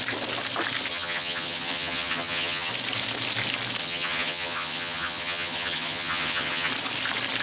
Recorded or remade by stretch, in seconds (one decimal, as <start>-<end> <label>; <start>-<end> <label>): 0.0-0.9 recorded; 0.9-2.7 remade; 2.7-3.8 recorded; 3.8-6.7 remade; 6.7-7.4 recorded

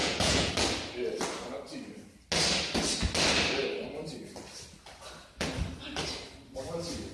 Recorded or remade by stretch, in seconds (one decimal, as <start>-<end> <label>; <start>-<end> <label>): 0.0-0.5 remade; 0.5-7.1 recorded

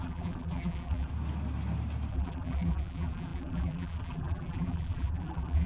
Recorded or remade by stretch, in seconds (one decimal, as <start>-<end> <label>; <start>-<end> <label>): 0.0-1.1 remade; 1.1-2.1 recorded; 2.1-5.7 remade

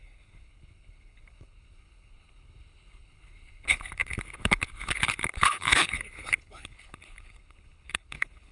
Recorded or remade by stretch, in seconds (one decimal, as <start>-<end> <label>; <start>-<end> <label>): 0.0-8.5 remade

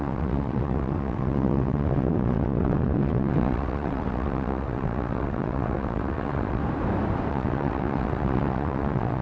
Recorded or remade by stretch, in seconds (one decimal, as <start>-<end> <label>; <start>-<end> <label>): 0.0-6.6 remade; 6.6-7.3 recorded; 7.3-9.2 remade

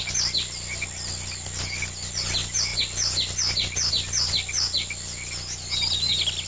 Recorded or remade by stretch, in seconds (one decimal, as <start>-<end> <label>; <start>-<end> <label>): 0.0-6.5 recorded

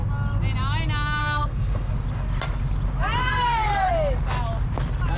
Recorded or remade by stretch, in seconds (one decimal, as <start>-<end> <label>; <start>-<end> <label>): 0.0-1.2 recorded; 1.2-1.9 remade; 1.9-3.2 recorded; 3.2-3.9 remade; 3.9-5.2 recorded

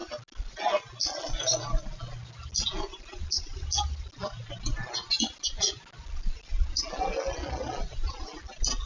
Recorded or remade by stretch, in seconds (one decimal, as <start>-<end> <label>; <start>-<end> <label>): 0.0-8.9 recorded